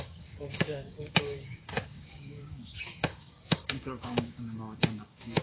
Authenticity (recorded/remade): remade